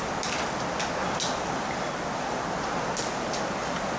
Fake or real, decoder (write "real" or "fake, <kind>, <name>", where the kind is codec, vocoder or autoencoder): real